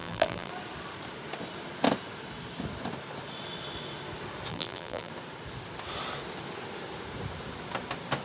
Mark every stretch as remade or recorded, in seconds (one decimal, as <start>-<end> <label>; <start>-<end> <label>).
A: 0.0-0.5 remade; 0.5-4.5 recorded; 4.5-5.1 remade; 5.1-8.2 recorded